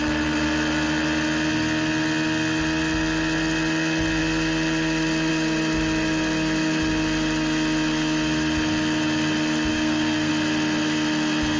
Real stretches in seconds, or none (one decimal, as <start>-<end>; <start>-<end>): 0.0-9.7; 10.3-11.6